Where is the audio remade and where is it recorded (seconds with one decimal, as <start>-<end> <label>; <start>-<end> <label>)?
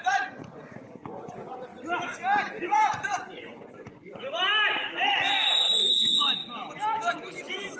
0.0-1.7 remade; 1.7-2.5 recorded; 2.5-4.5 remade; 4.5-5.6 recorded; 5.6-6.4 remade; 6.4-7.1 recorded; 7.1-7.8 remade